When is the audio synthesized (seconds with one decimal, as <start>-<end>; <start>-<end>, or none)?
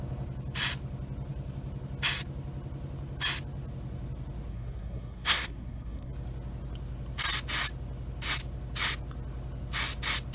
4.5-6.1